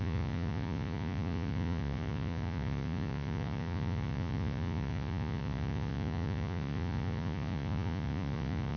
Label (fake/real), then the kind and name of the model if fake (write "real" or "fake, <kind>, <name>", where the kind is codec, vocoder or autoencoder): fake, vocoder, Vocos